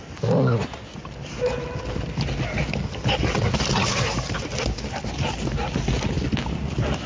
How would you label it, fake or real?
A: real